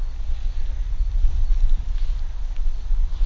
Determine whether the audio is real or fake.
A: real